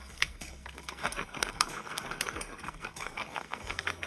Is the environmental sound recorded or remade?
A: remade